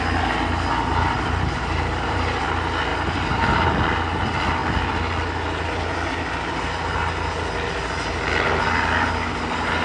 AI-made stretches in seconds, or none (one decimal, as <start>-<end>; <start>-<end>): 0.9-2.4; 2.9-3.7